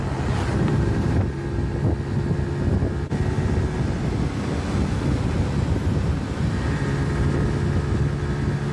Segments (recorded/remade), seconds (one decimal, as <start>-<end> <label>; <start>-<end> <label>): 0.0-0.6 recorded; 0.6-1.4 remade; 1.4-5.8 recorded; 5.8-7.3 remade; 7.3-8.7 recorded